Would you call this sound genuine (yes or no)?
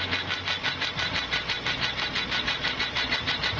yes